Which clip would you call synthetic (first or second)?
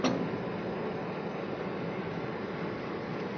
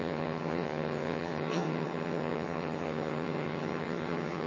second